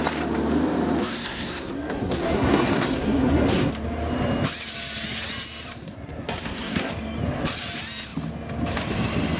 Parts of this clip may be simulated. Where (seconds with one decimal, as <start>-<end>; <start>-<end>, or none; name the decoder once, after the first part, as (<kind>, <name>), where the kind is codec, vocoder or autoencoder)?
1.0-3.7 (codec, SNAC); 5.8-6.9